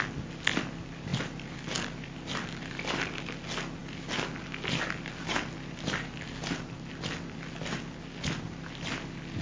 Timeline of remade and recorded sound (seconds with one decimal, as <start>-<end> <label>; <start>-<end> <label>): 0.0-9.4 recorded